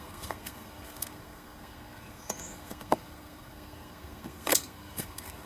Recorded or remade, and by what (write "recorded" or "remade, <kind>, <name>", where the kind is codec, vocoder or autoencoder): remade, codec, SNAC